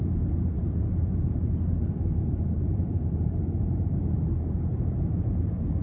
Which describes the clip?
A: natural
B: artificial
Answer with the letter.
B